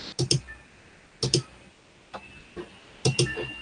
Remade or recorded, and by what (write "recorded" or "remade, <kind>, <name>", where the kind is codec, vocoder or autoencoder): recorded